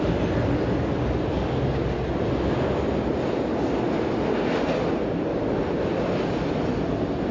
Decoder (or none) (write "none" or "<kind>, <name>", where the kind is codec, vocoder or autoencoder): none